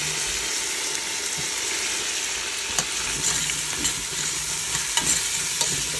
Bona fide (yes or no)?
yes